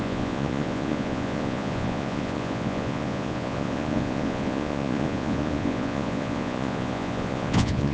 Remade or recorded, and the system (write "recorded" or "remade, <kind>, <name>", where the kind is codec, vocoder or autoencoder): remade, vocoder, Vocos